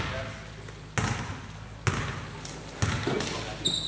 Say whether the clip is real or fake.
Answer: real